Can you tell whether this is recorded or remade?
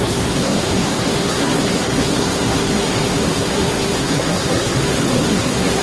remade